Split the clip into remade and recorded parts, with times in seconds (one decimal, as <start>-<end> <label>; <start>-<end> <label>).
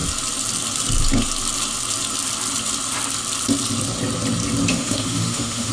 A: 0.0-4.7 recorded; 4.7-5.7 remade